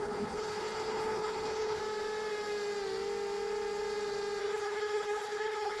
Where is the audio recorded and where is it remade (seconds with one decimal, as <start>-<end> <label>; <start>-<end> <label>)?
0.0-1.8 remade; 1.8-4.4 recorded; 4.4-5.8 remade